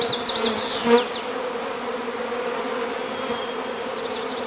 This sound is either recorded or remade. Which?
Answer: recorded